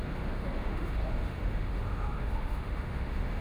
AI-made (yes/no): yes